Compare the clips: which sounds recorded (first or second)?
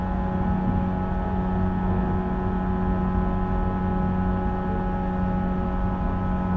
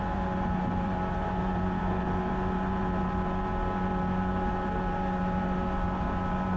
first